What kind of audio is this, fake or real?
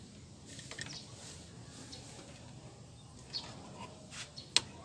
real